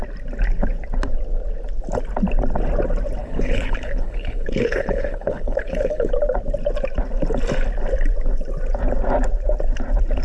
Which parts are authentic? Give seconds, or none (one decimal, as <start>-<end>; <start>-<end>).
0.0-3.2; 6.1-10.2